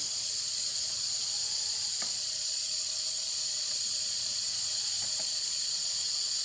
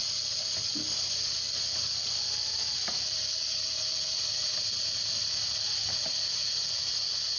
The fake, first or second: first